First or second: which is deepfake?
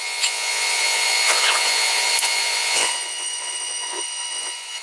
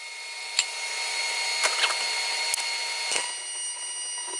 first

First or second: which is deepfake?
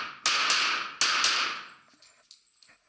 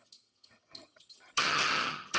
second